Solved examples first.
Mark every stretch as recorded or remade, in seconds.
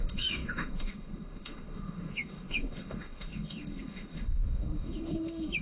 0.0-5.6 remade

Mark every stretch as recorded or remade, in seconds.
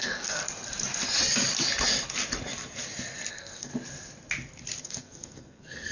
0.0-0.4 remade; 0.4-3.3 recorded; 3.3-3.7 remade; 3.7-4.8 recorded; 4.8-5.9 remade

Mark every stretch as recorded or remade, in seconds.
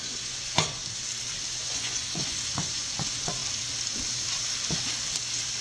0.0-0.8 remade; 0.8-1.6 recorded; 1.6-3.4 remade; 3.4-5.6 recorded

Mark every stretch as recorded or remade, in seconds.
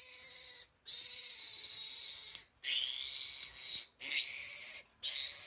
0.0-5.5 recorded